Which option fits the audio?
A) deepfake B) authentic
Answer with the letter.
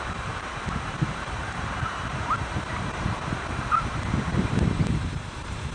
A